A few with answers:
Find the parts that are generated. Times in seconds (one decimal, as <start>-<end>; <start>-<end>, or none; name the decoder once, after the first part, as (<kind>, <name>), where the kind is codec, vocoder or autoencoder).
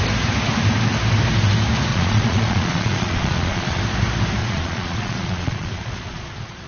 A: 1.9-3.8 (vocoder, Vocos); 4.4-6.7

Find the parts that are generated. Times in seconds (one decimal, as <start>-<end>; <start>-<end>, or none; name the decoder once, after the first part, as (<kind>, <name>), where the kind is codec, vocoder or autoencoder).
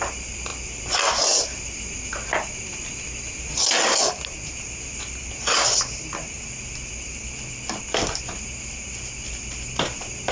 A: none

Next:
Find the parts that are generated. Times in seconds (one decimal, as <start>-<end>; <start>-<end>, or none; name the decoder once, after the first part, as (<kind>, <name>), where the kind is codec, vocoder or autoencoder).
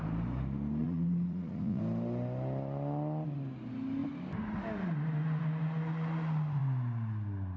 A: 0.8-1.8 (vocoder, Vocos)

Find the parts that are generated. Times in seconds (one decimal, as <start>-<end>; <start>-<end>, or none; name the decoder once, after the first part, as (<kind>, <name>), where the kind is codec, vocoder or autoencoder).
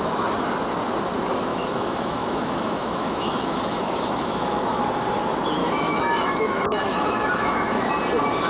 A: 1.5-4.8 (autoencoder, DAC-VAE); 5.6-7.9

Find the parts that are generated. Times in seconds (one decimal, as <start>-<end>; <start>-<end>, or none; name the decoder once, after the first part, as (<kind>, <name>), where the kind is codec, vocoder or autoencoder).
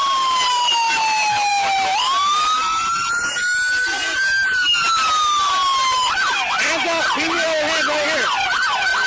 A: 0.0-0.7 (vocoder, BigVGAN v2); 1.5-3.2; 4.7-5.5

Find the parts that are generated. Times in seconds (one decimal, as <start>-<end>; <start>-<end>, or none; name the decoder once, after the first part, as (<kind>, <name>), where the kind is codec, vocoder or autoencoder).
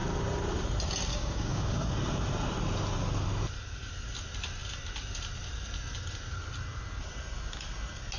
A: 1.1-1.9 (codec, DAC)